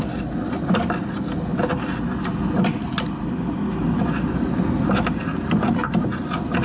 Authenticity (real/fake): real